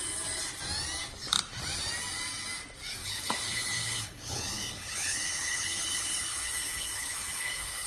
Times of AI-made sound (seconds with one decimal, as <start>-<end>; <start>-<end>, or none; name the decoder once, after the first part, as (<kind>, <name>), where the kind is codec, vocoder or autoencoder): 3.0-7.9 (codec, HILCodec)